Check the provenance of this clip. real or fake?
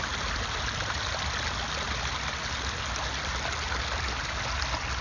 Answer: real